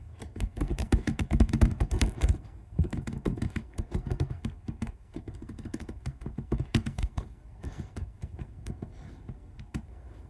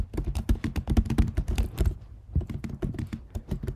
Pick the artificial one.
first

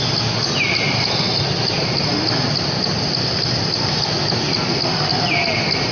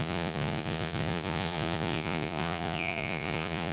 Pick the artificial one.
second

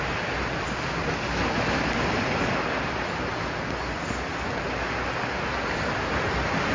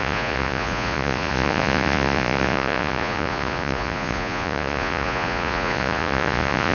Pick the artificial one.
second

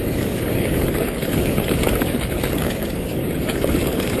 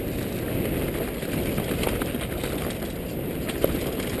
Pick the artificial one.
first